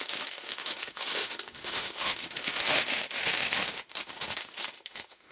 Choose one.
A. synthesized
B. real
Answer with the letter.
A